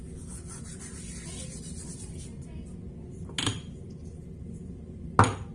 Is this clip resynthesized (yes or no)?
no